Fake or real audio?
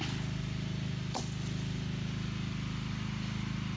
real